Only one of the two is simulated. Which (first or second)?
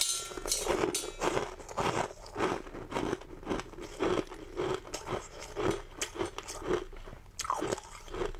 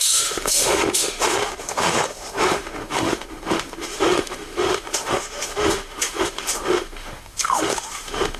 second